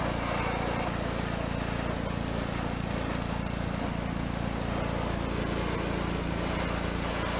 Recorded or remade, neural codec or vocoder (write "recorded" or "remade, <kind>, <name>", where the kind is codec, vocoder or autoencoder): recorded